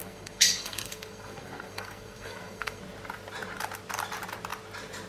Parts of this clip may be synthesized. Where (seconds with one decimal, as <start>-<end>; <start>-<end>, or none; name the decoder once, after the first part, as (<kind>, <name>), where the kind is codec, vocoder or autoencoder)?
0.0-2.8 (codec, SNAC)